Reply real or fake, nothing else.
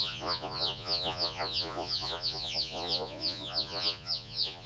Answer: fake